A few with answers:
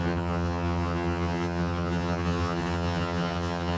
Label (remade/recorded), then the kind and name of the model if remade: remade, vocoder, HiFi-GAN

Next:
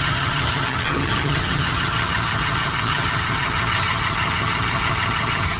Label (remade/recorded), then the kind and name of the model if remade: remade, vocoder, HiFi-GAN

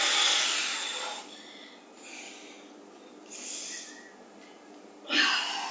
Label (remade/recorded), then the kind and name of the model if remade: recorded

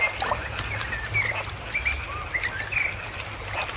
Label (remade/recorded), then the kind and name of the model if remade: recorded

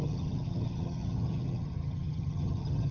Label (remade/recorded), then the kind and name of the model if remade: remade, vocoder, HiFi-GAN